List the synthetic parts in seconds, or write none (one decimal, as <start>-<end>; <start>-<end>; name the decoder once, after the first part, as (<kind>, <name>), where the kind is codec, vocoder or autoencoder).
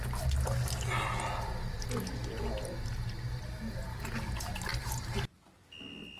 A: 4.7-5.4 (vocoder, BigVGAN v2)